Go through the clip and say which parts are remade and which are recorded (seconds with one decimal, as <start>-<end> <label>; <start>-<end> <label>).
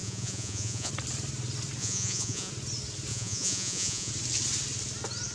0.0-0.9 remade; 0.9-1.8 recorded; 1.8-2.5 remade; 2.5-3.1 recorded; 3.1-4.1 remade; 4.1-5.3 recorded